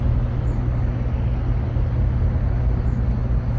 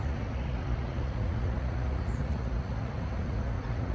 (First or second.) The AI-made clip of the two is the second